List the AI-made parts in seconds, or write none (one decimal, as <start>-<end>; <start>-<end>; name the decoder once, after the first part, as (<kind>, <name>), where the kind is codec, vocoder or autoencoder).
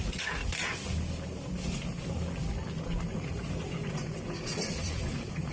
0.0-0.4 (vocoder, Vocos); 3.1-5.5